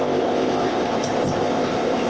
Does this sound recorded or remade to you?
remade